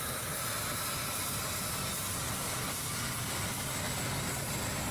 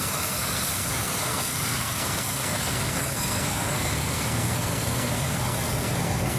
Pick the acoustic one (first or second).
first